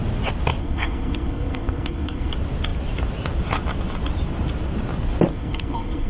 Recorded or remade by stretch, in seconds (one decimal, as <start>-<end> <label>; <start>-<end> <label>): 0.0-0.6 recorded; 0.6-2.3 remade; 2.3-5.3 recorded; 5.3-6.1 remade